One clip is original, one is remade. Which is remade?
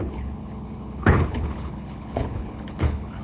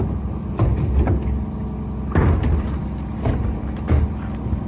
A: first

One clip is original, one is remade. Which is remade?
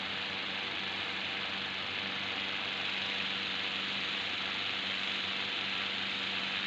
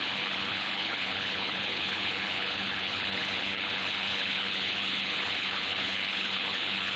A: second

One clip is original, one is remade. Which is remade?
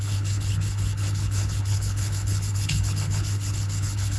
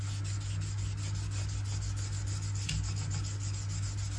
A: first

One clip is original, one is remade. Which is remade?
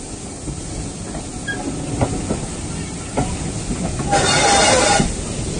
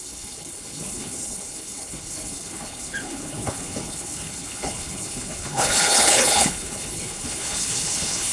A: second